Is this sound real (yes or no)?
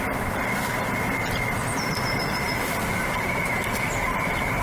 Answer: yes